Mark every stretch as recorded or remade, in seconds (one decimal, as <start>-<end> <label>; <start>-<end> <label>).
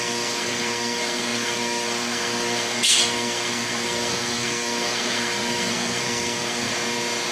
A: 0.0-6.7 remade; 6.7-7.3 recorded